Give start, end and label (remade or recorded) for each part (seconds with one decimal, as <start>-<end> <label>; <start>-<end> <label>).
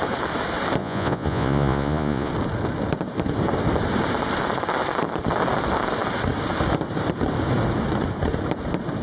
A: 0.0-0.8 recorded; 0.8-2.3 remade; 2.3-9.0 recorded